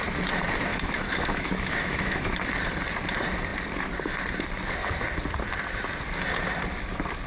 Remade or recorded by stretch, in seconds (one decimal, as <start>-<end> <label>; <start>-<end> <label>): 0.0-0.7 recorded; 0.7-2.5 remade; 2.5-7.3 recorded

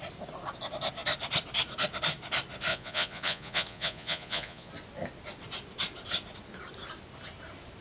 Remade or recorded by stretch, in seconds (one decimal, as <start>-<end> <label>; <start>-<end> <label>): 0.0-2.7 recorded; 2.7-4.7 remade; 4.7-7.8 recorded

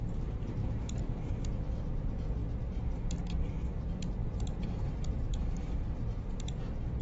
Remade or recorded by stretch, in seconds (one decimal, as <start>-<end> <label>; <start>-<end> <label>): 0.0-0.6 recorded; 0.6-1.2 remade; 1.2-4.2 recorded; 4.2-6.2 remade; 6.2-7.0 recorded

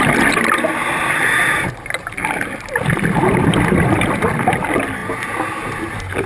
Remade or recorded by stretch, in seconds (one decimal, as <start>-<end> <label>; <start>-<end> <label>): 0.0-6.3 recorded

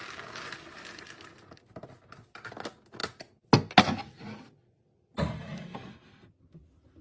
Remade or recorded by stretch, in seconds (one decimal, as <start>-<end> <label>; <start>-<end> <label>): 0.0-7.0 recorded